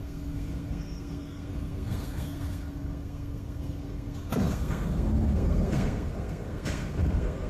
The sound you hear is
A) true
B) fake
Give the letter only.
B